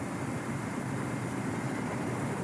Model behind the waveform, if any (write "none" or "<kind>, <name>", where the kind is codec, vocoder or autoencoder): vocoder, BigVGAN v2